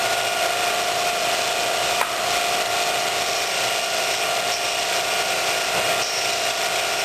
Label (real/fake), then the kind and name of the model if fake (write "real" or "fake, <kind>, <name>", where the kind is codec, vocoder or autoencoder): real